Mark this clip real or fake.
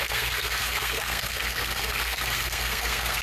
fake